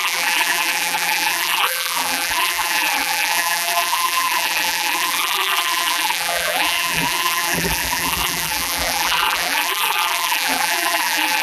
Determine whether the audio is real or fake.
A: fake